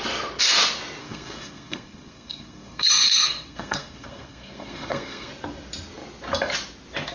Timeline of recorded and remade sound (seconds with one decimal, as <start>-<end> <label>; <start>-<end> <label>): 0.0-1.0 recorded; 1.0-5.3 remade; 5.3-7.1 recorded